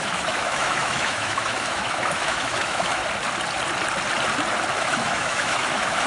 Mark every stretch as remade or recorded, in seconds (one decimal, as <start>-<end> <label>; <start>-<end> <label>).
0.0-3.0 remade; 3.0-4.8 recorded; 4.8-6.1 remade